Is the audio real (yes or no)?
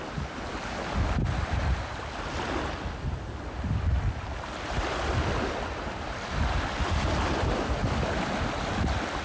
yes